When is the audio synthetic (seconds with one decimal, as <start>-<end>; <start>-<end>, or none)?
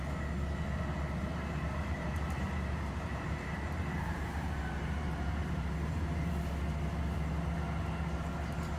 1.3-6.3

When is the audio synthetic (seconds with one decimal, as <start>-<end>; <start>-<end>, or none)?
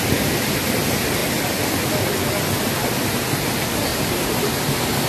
3.9-4.6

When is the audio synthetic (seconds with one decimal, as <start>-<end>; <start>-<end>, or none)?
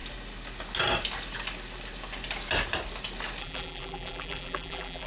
3.4-5.1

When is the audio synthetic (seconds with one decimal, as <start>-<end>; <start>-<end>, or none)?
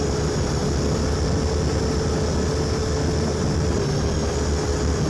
none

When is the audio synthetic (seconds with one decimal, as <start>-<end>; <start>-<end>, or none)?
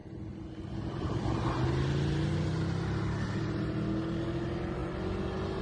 none